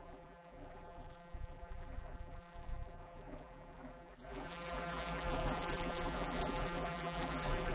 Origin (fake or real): fake